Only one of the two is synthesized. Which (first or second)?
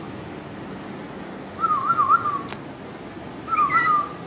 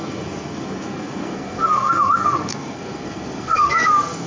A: second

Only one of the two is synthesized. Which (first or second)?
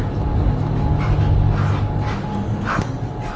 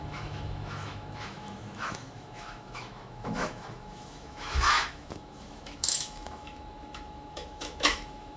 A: second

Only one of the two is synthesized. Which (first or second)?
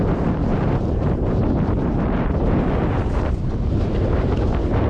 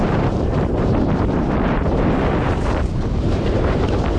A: second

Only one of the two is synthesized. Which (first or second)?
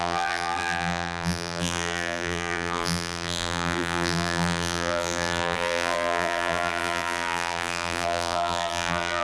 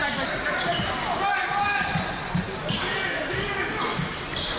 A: first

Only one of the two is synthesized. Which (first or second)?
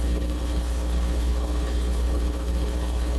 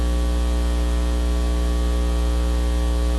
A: first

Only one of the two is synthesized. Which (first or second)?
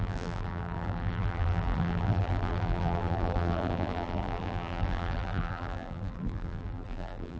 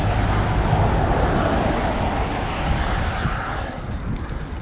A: first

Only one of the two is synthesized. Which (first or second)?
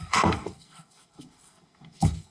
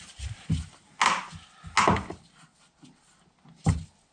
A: first